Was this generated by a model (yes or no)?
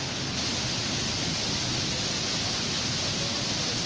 no